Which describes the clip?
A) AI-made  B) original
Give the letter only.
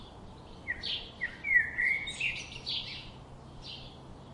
B